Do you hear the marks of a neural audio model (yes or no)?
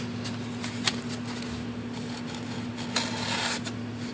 no